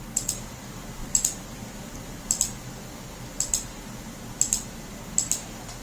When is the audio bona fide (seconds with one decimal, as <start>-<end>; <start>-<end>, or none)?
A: 0.0-1.0; 2.0-5.8